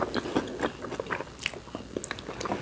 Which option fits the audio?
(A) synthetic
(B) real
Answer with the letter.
B